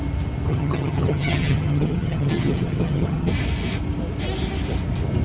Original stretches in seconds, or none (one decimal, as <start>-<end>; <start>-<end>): 0.0-0.5; 3.3-5.2